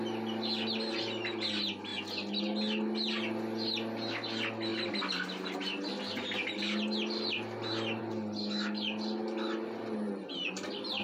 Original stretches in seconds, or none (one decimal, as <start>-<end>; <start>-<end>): 0.0-11.0